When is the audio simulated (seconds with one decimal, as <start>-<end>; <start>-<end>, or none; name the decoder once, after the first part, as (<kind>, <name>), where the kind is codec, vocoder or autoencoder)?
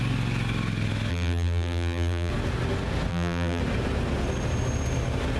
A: 1.1-2.3 (vocoder, BigVGAN v2); 3.1-3.6